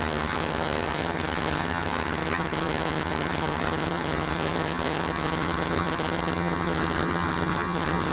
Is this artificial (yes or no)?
yes